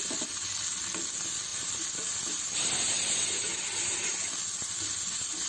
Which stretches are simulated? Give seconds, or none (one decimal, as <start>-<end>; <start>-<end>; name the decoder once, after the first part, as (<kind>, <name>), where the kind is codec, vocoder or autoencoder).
none